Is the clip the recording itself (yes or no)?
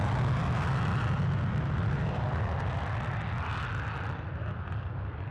yes